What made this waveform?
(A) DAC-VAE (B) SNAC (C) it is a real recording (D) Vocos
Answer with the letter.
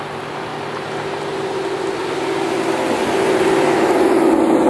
C